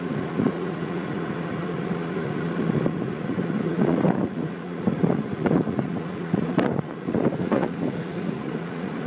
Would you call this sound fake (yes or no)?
yes